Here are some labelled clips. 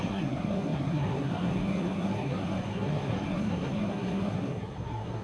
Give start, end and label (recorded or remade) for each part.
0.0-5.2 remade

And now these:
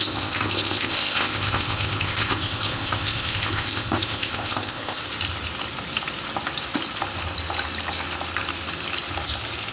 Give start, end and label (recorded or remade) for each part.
0.0-5.0 remade; 5.0-9.7 recorded

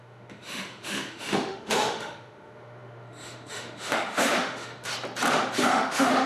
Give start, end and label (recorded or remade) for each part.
0.0-4.9 remade; 4.9-5.6 recorded; 5.6-6.3 remade

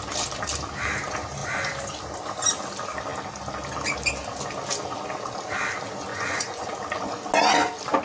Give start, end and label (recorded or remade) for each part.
0.0-6.1 recorded; 6.1-6.7 remade; 6.7-8.0 recorded

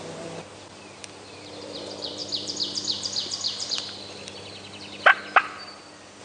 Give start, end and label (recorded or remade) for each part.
0.0-6.2 remade

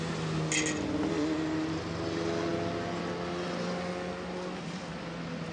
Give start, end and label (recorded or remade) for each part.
0.0-5.5 recorded

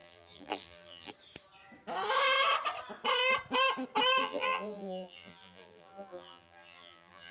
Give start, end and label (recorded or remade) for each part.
0.0-1.1 remade; 1.1-4.2 recorded; 4.2-7.3 remade